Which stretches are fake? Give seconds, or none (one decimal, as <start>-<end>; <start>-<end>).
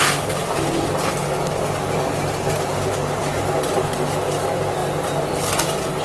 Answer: none